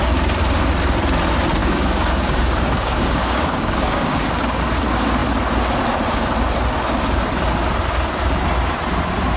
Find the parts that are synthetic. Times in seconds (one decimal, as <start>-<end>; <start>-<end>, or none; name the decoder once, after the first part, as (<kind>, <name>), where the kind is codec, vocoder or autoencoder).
1.6-4.6 (codec, DAC)

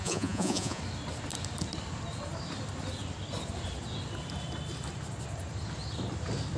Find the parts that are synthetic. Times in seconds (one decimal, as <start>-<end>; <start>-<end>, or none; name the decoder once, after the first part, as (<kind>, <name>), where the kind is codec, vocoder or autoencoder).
0.0-0.8 (vocoder, Vocos)